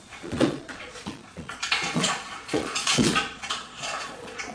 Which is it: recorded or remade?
remade